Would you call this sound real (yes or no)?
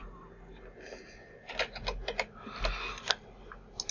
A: yes